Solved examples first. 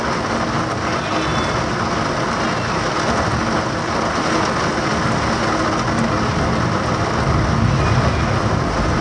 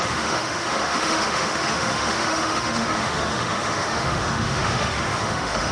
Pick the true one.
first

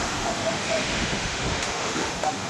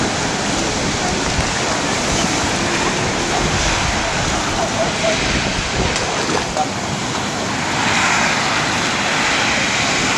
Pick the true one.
second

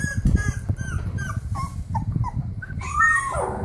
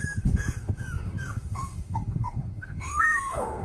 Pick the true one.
first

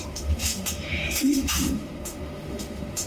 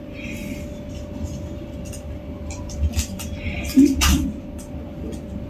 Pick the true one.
second